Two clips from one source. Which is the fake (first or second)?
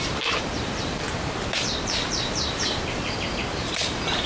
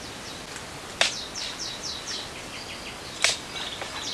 first